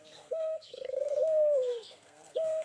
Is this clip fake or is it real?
fake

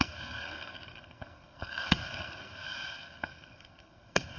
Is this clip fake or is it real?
fake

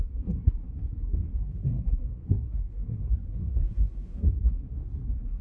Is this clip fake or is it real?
fake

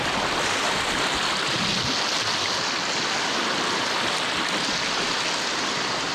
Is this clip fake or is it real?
real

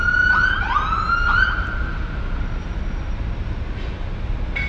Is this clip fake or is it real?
real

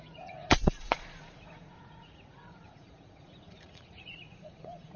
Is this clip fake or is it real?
fake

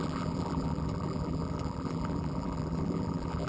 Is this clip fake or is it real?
fake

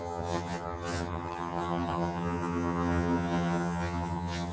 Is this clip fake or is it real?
fake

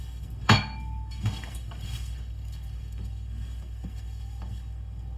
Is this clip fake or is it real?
fake